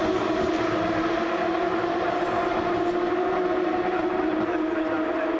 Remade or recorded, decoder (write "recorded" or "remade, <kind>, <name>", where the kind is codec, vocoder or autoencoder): recorded